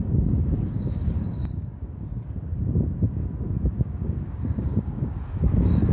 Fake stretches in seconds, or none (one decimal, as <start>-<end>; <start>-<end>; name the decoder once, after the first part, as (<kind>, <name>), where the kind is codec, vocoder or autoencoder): 0.0-5.9 (codec, DAC)